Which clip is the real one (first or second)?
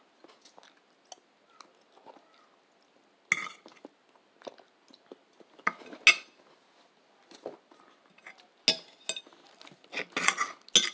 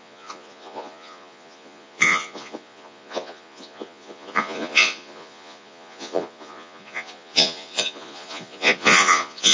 first